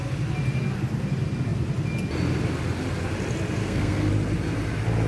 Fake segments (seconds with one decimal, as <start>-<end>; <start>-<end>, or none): 3.6-4.1